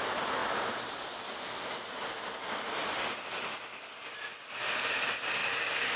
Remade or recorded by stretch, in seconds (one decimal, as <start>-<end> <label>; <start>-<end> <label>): 0.0-5.4 recorded; 5.4-6.0 remade